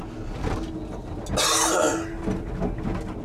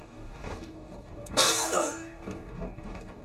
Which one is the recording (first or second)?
first